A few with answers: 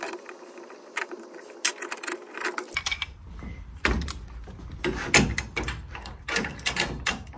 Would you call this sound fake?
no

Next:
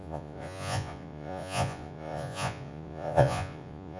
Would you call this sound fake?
yes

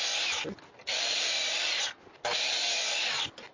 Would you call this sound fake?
no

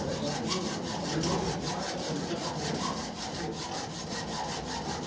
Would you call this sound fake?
no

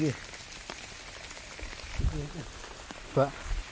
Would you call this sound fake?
no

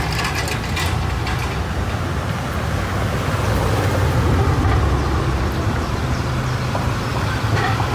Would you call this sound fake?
no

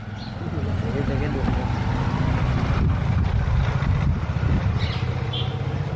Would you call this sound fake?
no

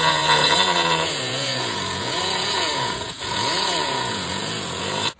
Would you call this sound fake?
yes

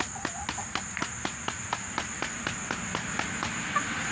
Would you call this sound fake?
no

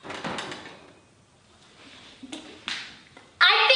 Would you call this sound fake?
no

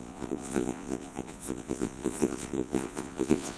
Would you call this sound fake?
yes